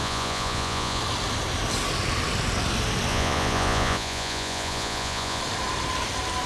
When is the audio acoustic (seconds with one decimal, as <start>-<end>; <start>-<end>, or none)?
1.0-3.1; 5.4-6.5